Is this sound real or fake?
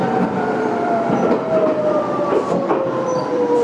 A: fake